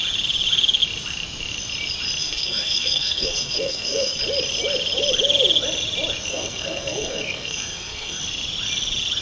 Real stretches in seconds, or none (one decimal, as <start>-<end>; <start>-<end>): 0.0-2.2; 4.2-6.3; 8.2-9.2